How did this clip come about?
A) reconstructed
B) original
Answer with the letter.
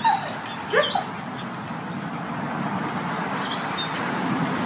B